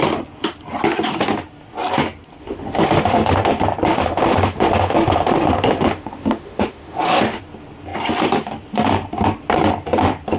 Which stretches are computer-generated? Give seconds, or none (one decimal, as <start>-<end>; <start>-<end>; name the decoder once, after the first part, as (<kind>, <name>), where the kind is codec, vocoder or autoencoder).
2.4-3.5 (autoencoder, DAC-VAE); 3.9-7.4